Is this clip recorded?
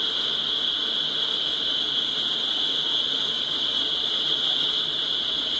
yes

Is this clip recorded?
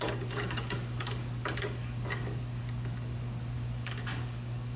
no